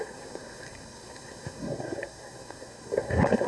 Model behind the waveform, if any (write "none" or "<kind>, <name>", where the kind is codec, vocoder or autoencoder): codec, SNAC